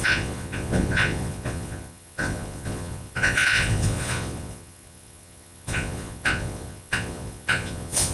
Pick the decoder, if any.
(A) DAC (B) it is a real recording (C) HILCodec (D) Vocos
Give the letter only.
D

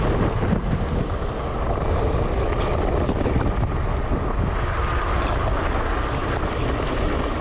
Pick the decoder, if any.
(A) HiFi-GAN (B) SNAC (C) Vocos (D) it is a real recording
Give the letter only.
D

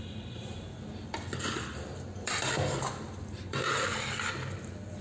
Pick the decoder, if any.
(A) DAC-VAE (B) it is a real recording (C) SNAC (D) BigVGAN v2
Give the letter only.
D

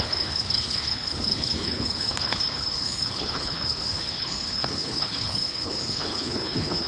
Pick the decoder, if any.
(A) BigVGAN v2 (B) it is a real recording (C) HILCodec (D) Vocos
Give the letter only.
C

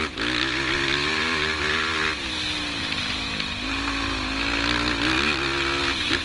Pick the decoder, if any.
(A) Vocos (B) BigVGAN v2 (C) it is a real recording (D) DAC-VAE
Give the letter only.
C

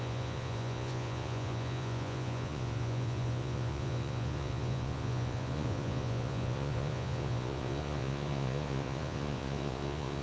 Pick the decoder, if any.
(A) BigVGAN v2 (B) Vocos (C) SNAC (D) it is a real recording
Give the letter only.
B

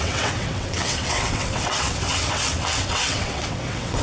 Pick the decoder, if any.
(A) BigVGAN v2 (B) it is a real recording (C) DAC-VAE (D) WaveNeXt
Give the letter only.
D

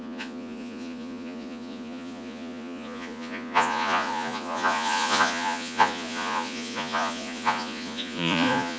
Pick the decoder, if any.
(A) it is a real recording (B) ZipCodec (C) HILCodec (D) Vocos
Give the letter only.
D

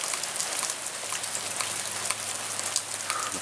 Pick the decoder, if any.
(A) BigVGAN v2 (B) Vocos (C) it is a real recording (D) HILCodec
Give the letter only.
C